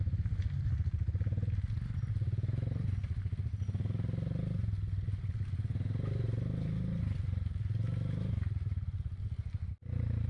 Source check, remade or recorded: recorded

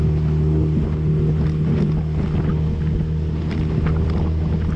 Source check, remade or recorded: recorded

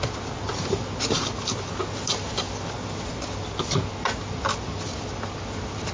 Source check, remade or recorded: recorded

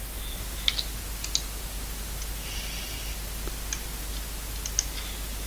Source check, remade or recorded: recorded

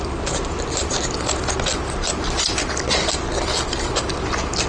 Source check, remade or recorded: recorded